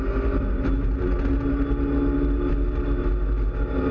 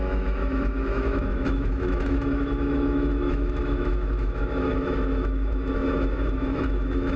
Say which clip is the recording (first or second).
first